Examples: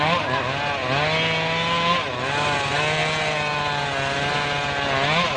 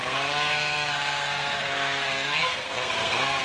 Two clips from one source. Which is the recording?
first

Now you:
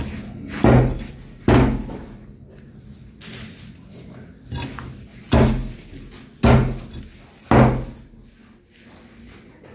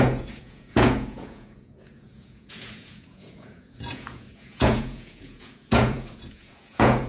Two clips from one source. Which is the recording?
first